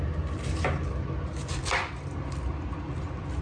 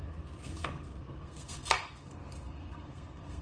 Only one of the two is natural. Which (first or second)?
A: first